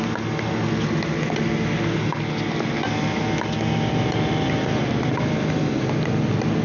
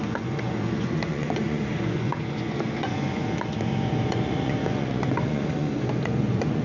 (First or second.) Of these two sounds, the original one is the first